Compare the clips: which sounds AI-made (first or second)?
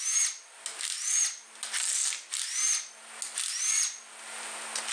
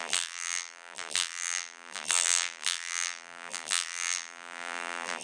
second